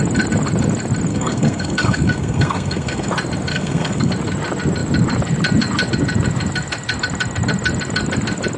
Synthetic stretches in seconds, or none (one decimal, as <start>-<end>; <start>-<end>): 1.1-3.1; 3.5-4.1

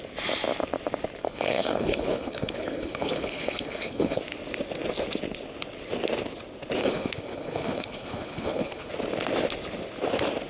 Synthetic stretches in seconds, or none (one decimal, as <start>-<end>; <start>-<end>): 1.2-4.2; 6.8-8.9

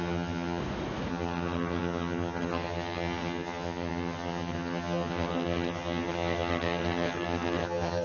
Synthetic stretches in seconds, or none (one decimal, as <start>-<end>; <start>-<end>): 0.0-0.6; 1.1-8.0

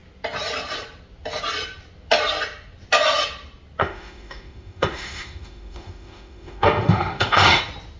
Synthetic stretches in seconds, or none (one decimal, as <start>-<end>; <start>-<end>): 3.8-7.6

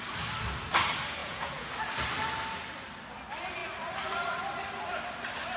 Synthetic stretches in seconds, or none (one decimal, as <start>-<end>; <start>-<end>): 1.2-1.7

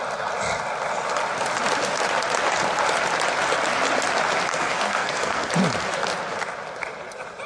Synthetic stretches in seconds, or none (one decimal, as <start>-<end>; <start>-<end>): 4.5-5.5

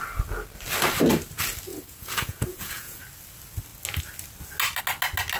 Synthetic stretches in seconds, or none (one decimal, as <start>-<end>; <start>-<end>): 1.7-3.0

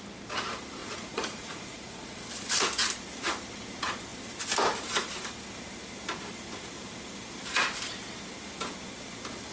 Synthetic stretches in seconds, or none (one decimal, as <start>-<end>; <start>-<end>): 0.8-2.2